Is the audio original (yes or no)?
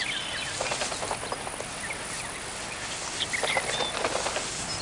yes